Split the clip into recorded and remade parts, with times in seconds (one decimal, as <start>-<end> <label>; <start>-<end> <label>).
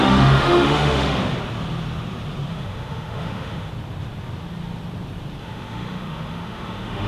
0.0-1.2 remade; 1.2-2.5 recorded; 2.5-3.7 remade; 3.7-5.4 recorded; 5.4-7.1 remade